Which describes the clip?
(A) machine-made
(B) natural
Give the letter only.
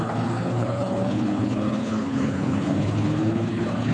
A